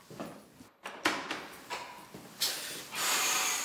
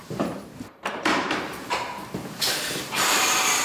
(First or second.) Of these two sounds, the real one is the first